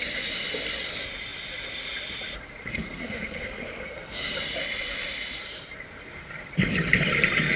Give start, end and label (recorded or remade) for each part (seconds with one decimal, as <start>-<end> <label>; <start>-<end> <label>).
0.0-2.8 recorded; 2.8-4.3 remade; 4.3-7.6 recorded

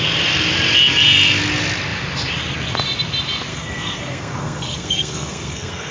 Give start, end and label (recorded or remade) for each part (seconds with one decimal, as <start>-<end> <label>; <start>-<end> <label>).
0.0-3.5 recorded; 3.5-5.9 remade

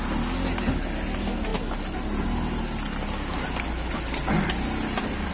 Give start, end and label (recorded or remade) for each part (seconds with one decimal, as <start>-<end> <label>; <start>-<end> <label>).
0.0-5.3 recorded

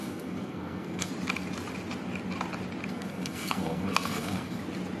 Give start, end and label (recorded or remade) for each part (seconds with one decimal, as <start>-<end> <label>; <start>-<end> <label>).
0.0-1.1 remade; 1.1-2.9 recorded; 2.9-4.6 remade; 4.6-5.0 recorded

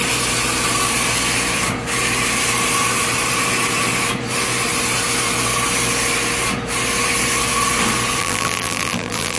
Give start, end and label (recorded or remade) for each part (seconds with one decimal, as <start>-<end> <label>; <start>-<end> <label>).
0.0-8.2 recorded; 8.2-9.4 remade

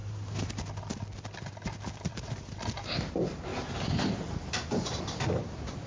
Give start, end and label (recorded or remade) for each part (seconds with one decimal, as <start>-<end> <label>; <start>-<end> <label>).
0.0-0.5 remade; 0.5-2.1 recorded; 2.1-2.6 remade; 2.6-3.5 recorded; 3.5-5.0 remade; 5.0-5.9 recorded

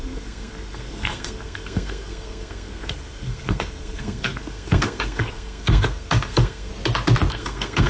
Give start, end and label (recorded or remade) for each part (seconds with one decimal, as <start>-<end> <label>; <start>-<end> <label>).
0.0-6.7 remade; 6.7-7.3 recorded; 7.3-7.9 remade

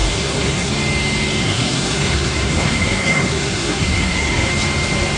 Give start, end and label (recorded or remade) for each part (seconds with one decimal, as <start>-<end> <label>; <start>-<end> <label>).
0.0-0.7 remade; 0.7-1.4 recorded; 1.4-4.5 remade; 4.5-5.2 recorded